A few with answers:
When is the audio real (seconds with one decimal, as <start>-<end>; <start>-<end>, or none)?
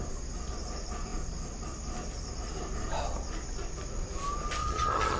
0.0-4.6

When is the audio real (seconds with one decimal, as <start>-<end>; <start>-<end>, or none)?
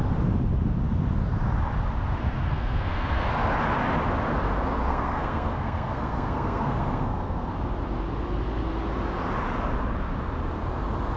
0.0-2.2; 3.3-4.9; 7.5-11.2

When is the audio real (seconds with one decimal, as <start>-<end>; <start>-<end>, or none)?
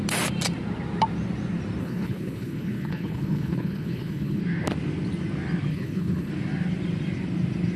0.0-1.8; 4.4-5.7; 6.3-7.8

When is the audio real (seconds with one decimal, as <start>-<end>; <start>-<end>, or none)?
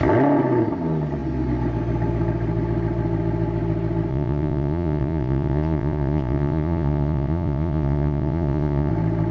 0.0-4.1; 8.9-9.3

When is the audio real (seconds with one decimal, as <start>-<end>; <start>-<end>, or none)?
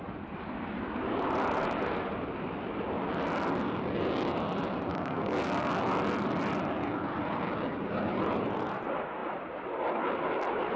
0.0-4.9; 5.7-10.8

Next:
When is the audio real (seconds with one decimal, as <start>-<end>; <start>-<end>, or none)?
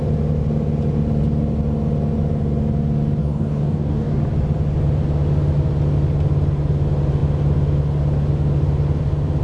0.0-3.2; 4.2-9.4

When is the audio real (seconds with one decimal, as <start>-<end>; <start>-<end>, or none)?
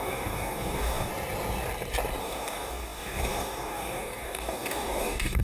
1.1-2.2